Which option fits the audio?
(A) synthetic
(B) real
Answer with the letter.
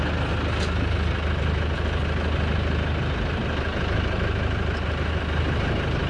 B